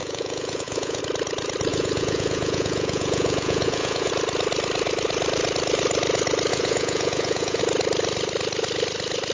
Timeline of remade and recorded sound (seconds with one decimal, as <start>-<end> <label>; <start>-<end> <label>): 0.0-1.0 remade; 1.0-1.7 recorded; 1.7-4.1 remade; 4.1-6.5 recorded; 6.5-7.6 remade; 7.6-9.3 recorded